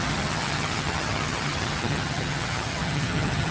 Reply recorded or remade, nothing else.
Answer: remade